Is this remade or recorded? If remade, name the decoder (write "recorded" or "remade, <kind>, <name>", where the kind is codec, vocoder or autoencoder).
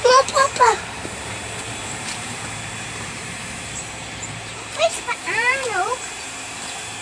remade, vocoder, BigVGAN v2